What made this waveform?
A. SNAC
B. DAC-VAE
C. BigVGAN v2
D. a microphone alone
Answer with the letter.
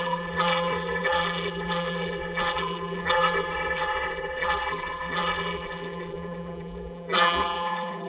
C